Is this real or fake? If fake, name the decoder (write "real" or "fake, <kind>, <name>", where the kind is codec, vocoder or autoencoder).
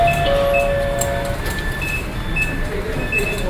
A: real